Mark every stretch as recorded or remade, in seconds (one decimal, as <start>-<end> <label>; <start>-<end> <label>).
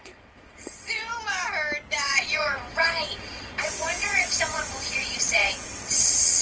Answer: 0.0-1.1 remade; 1.1-2.0 recorded; 2.0-6.4 remade